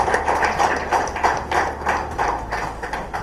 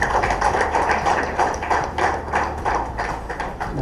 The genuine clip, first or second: first